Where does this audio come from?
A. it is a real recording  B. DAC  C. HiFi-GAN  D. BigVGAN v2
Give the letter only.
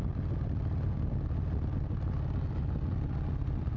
A